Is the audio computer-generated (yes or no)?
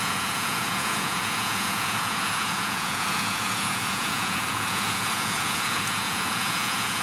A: yes